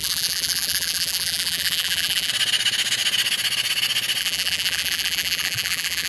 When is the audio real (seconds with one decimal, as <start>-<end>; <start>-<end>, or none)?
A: 2.3-4.2